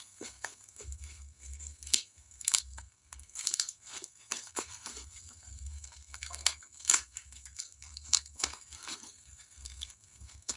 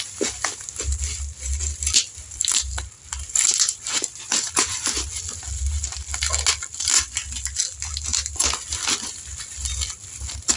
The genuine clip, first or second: second